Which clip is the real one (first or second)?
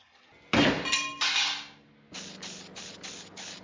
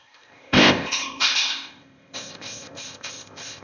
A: first